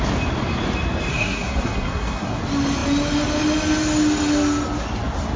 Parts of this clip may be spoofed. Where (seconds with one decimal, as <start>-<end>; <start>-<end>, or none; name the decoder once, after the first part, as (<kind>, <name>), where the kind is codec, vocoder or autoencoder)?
1.1-2.4 (codec, SNAC)

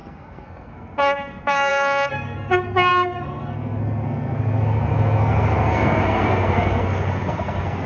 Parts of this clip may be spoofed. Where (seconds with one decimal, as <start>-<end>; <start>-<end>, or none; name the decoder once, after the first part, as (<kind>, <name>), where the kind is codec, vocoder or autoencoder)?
0.0-7.9 (codec, SNAC)

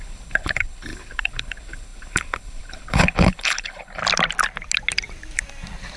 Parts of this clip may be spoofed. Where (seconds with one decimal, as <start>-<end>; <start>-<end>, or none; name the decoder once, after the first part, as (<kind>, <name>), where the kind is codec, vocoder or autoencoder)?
0.0-4.0 (codec, HILCodec)

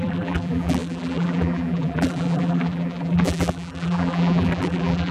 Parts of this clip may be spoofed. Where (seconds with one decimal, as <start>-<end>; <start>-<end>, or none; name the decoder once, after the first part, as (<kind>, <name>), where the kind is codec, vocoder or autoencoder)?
0.0-5.1 (vocoder, BigVGAN v2)

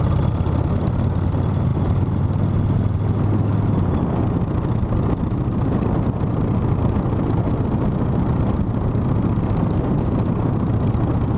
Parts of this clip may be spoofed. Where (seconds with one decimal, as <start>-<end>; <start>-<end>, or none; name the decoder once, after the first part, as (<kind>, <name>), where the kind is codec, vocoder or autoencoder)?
none